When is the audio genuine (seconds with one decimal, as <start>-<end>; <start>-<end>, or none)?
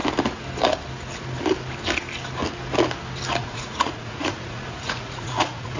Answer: 0.0-3.4